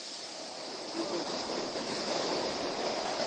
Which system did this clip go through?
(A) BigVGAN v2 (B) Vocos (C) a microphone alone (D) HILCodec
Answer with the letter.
A